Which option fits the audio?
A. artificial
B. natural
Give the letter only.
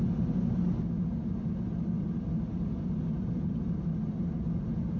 B